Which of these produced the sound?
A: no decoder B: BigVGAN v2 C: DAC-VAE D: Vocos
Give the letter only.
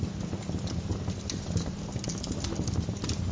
A